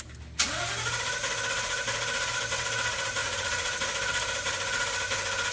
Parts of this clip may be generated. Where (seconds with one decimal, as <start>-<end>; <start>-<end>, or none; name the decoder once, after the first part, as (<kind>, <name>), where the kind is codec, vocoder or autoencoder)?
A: 3.2-3.8 (vocoder, Vocos)